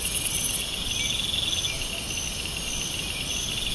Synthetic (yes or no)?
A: no